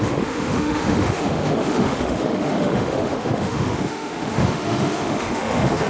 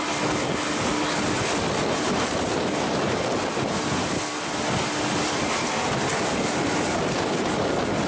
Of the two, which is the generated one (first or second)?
first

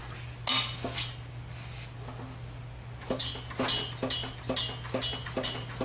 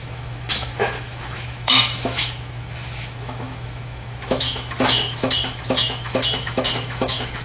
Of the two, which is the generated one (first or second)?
second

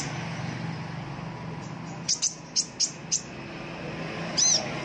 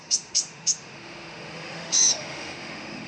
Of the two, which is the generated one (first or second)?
second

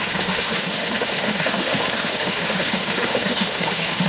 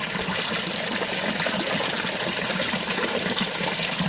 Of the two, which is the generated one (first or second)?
first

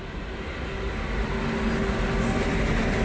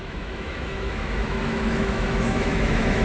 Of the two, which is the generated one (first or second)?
second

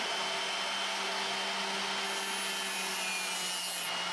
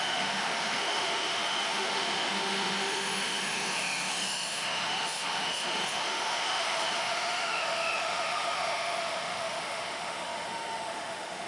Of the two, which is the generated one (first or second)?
second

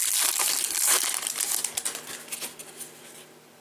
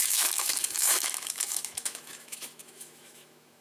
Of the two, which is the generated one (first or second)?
second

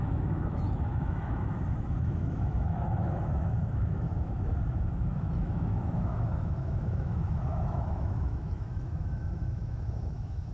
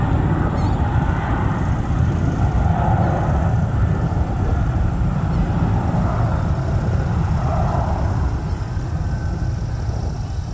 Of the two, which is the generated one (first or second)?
first